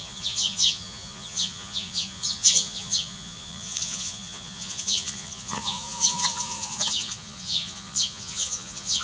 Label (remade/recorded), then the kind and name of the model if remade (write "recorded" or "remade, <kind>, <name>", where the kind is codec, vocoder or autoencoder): remade, vocoder, Vocos